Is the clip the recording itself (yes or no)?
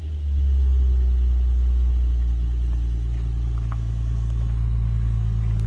yes